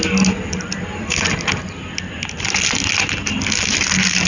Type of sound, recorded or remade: recorded